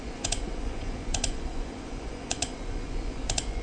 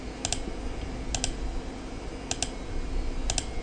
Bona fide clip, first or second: second